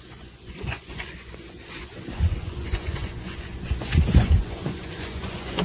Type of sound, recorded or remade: remade